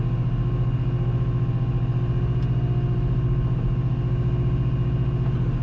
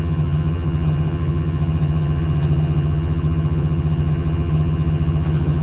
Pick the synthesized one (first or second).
second